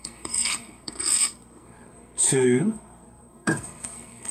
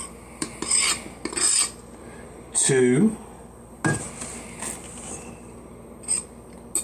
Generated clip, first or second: first